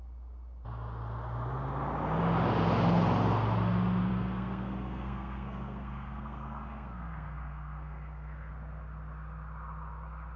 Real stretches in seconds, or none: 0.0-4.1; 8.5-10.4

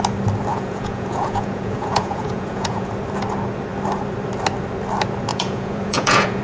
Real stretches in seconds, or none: 0.0-0.5; 2.9-5.3

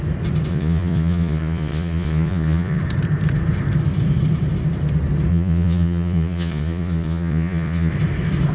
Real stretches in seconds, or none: 0.0-0.5; 2.8-5.3; 7.9-8.5

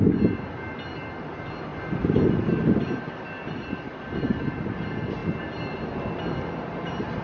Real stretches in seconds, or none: 0.0-7.2

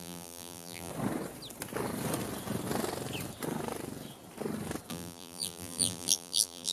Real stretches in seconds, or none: 0.9-4.9

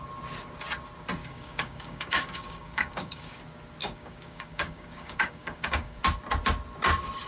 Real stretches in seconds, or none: 0.0-1.2; 3.4-3.8; 6.0-7.3

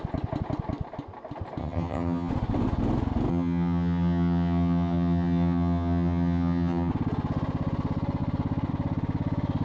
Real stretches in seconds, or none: 0.0-1.6; 2.3-3.3; 6.9-9.6